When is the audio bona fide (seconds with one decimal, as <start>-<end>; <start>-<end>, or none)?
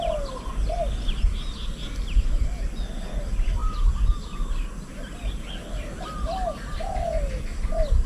0.0-8.1